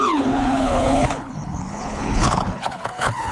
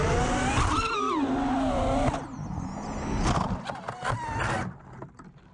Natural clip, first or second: second